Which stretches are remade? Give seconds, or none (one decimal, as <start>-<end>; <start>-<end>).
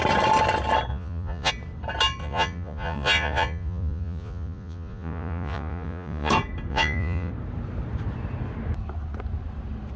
0.9-1.5; 2.2-6.3; 6.7-7.3